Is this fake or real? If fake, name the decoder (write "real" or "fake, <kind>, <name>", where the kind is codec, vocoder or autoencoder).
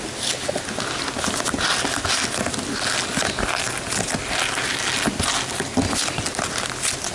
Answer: real